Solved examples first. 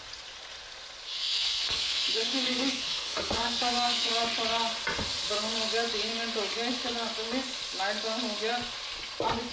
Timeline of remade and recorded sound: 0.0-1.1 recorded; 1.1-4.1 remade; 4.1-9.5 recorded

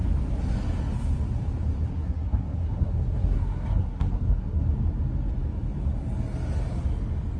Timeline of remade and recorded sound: 0.0-1.9 recorded; 1.9-4.6 remade; 4.6-7.4 recorded

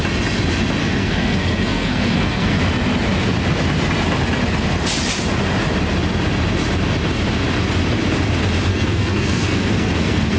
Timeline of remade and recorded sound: 0.0-0.8 recorded; 0.8-2.6 remade; 2.6-8.7 recorded; 8.7-10.4 remade

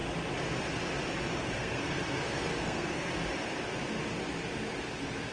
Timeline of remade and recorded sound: 0.0-1.4 recorded; 1.4-3.1 remade; 3.1-5.3 recorded